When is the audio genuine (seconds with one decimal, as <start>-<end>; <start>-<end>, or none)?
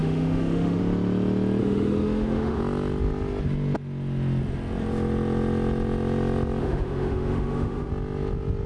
0.8-1.6; 2.6-6.6; 7.9-8.7